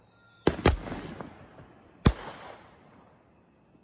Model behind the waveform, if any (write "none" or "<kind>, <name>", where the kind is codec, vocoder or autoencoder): none